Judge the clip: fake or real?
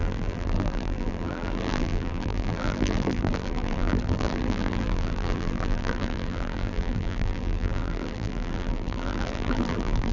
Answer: fake